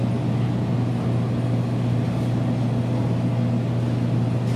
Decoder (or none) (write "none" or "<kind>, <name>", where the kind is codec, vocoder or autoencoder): none